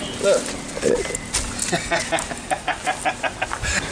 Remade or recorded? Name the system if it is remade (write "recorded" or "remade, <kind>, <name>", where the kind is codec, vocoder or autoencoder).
recorded